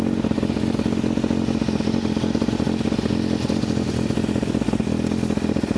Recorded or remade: recorded